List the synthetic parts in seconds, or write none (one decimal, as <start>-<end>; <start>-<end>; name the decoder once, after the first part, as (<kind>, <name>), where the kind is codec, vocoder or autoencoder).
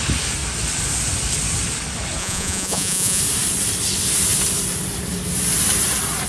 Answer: 2.2-3.2 (vocoder, Vocos)